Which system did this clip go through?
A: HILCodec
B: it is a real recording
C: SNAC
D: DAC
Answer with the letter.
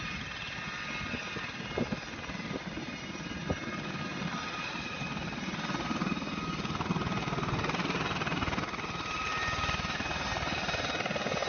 B